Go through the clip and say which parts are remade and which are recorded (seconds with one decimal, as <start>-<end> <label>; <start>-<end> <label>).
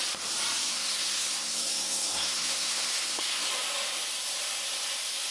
0.0-0.7 recorded; 0.7-3.5 remade; 3.5-5.3 recorded